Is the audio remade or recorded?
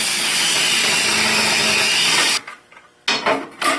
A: recorded